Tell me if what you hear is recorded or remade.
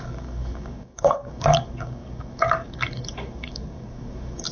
remade